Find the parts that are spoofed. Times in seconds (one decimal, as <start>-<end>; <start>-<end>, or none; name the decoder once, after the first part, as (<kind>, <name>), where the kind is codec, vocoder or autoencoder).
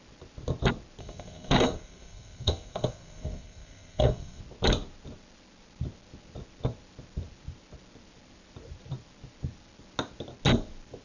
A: 1.0-4.4 (codec, SNAC)